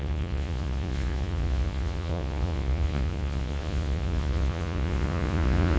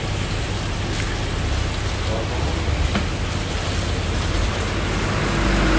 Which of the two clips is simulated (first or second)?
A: first